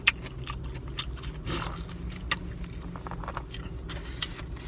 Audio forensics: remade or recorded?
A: recorded